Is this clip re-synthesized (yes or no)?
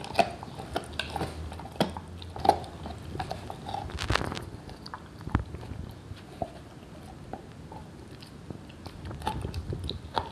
no